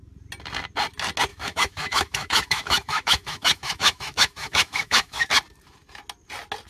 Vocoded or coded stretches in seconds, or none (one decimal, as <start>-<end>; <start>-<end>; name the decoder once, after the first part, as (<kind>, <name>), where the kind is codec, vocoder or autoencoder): 1.3-5.3 (autoencoder, DAC-VAE)